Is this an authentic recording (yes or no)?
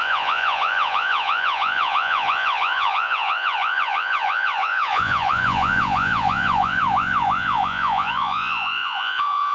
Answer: no